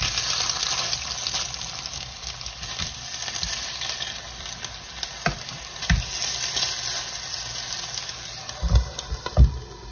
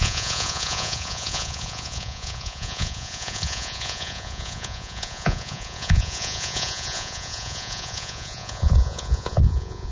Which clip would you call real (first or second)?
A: first